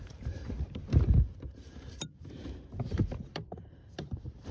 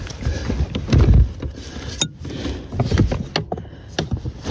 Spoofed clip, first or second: first